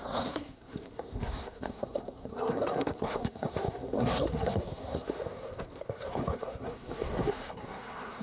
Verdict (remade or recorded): remade